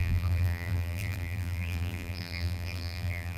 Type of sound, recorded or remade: remade